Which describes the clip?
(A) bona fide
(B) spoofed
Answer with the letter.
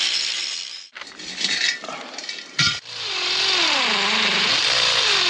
B